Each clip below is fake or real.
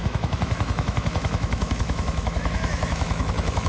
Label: fake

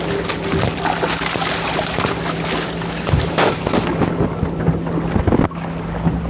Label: real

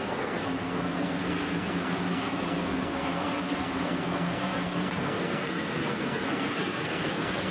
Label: fake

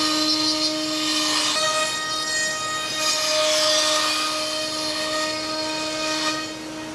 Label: real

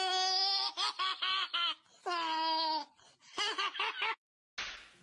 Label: real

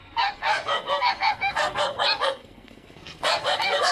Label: fake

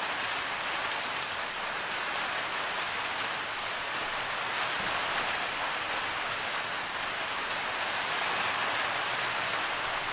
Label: real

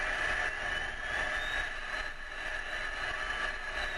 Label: real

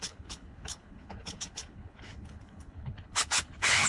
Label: fake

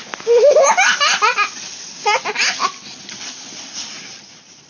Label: real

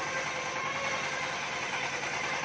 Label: real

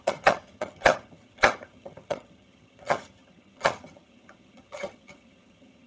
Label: fake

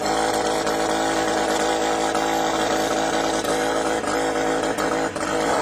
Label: real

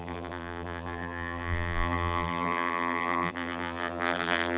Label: fake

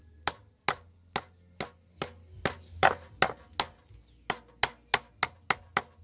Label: real